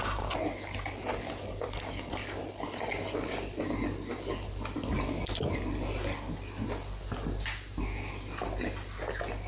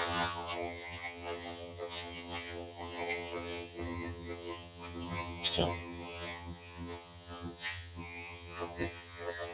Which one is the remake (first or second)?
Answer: second